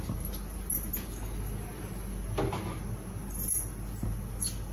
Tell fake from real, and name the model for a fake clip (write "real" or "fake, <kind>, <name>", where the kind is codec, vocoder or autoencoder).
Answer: real